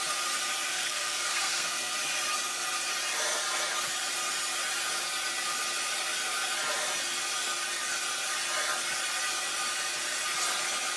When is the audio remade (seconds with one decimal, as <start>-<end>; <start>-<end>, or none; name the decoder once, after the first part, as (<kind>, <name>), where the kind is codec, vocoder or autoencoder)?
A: 0.7-1.9 (codec, SNAC)